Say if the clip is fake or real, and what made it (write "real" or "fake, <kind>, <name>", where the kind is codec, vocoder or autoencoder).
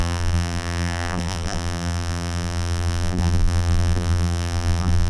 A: fake, vocoder, BigVGAN v2